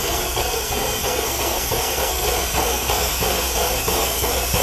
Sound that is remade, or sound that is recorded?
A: remade